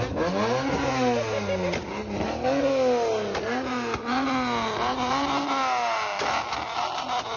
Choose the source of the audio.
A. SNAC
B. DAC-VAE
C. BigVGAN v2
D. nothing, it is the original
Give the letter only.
D